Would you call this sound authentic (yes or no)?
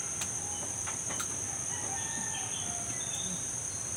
yes